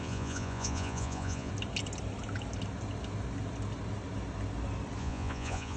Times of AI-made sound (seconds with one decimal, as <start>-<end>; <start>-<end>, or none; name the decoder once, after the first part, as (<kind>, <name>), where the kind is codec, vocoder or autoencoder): 0.0-1.5 (vocoder, Vocos); 5.0-5.8